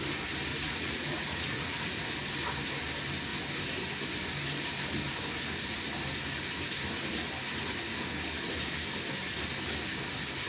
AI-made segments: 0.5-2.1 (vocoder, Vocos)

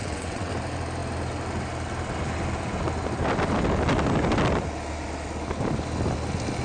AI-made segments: 0.0-0.5 (vocoder, WaveNeXt)

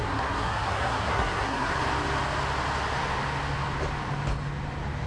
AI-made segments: 0.0-1.8 (codec, SNAC)